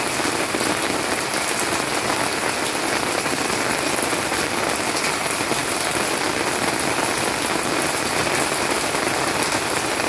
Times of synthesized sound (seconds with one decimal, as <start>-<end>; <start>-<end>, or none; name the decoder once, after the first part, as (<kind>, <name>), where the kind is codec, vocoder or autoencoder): none